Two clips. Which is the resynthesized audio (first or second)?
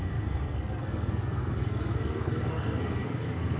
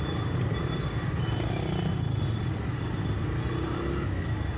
first